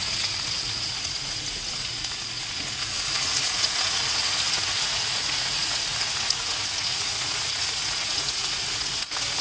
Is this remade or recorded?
remade